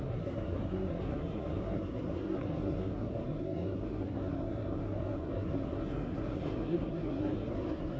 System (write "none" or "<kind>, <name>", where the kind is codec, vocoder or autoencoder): codec, SNAC